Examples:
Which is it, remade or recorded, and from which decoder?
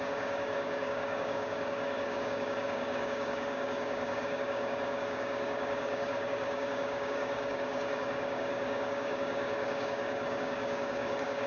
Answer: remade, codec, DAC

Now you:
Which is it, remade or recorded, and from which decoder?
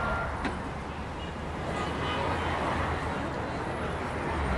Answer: recorded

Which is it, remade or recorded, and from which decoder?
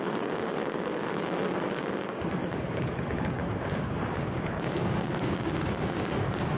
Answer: remade, codec, DAC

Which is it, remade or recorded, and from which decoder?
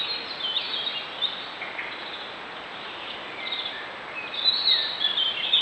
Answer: recorded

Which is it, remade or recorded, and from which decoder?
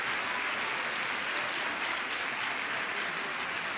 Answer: recorded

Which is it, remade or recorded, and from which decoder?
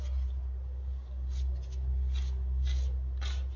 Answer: recorded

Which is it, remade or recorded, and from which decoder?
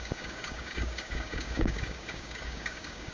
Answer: remade, codec, DAC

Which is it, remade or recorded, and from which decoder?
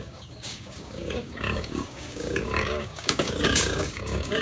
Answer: remade, codec, DAC